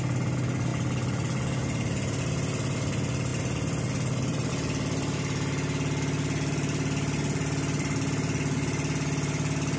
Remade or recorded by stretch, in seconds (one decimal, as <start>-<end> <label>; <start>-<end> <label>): 0.0-9.8 recorded